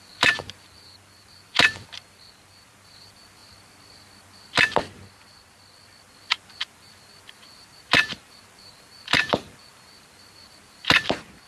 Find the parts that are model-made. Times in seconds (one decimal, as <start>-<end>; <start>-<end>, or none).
0.0-3.4; 6.6-11.5